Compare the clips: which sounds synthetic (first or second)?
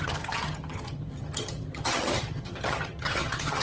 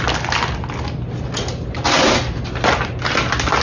first